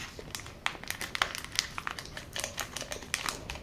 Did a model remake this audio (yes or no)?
no